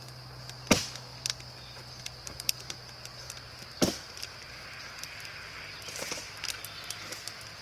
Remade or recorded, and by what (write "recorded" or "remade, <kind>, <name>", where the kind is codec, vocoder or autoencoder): recorded